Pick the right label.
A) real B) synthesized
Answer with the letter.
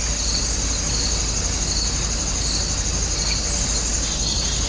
A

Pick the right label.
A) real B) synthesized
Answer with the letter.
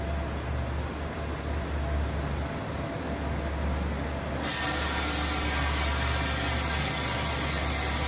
A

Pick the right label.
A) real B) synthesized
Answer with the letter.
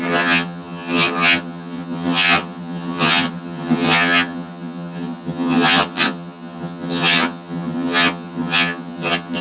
B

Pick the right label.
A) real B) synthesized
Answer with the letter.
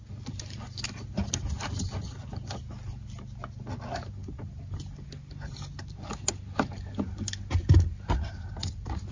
A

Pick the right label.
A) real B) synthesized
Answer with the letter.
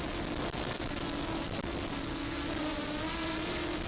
A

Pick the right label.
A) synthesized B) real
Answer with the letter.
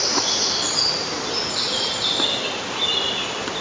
B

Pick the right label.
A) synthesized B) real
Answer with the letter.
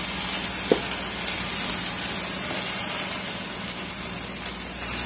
B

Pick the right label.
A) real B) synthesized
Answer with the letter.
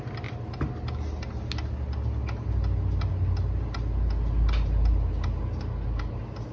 A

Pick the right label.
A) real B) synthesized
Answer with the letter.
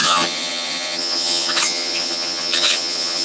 B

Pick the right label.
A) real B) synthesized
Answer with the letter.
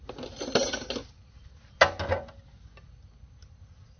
A